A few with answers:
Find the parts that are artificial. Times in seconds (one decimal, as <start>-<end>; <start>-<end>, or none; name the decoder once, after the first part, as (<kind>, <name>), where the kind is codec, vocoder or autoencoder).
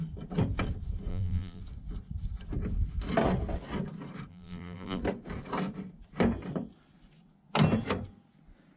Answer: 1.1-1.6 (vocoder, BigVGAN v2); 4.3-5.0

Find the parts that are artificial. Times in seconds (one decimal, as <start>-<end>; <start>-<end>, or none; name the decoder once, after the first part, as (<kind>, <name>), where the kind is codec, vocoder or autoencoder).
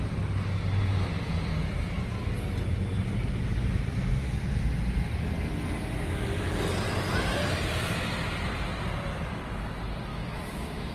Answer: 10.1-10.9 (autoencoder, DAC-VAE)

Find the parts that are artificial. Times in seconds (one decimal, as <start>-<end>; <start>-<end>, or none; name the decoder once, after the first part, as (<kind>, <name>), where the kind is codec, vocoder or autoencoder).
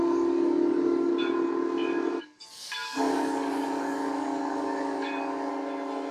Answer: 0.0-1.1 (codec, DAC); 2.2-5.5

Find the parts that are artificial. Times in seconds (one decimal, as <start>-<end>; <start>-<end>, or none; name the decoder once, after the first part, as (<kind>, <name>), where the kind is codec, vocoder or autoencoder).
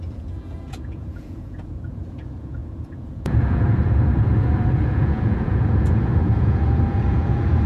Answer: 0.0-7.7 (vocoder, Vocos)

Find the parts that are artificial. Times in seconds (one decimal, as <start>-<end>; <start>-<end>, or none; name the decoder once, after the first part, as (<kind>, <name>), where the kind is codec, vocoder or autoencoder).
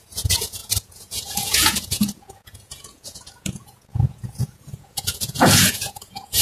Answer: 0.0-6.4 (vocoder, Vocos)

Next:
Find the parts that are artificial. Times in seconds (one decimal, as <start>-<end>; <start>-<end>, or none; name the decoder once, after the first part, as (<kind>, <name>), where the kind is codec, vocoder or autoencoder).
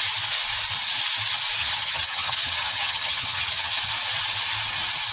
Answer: 1.6-3.7 (vocoder, HiFi-GAN)